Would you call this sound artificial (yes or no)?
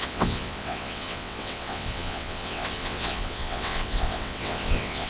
yes